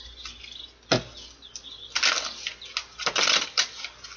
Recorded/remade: recorded